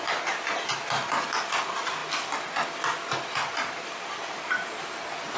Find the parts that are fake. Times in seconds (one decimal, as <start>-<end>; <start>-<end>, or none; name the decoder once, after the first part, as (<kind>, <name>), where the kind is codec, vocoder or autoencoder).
none